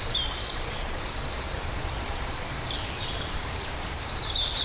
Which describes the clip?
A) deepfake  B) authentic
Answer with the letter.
A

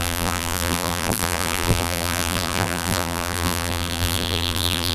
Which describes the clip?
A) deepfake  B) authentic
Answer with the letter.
A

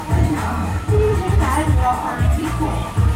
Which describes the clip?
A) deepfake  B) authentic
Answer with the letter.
A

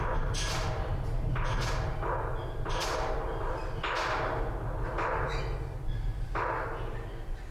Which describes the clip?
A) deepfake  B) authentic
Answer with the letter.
B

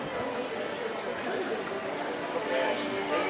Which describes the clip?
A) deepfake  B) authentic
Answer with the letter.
B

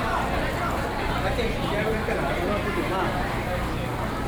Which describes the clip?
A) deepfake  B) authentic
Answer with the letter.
B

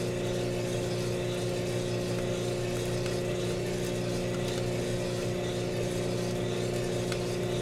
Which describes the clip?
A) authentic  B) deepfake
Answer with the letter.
A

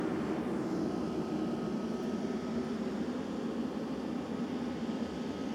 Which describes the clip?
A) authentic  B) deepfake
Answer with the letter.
A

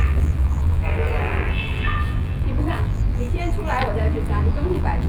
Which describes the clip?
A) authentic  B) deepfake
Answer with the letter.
B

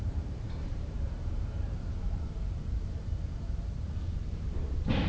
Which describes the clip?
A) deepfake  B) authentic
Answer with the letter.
A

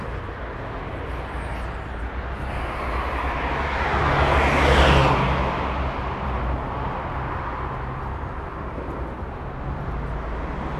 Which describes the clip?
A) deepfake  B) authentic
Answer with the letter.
B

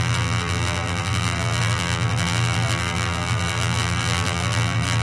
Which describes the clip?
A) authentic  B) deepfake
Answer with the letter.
B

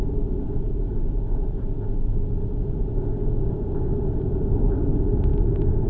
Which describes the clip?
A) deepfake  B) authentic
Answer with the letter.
B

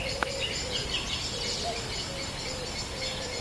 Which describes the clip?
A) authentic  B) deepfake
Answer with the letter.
A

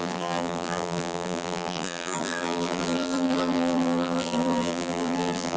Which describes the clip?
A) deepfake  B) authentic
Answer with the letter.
A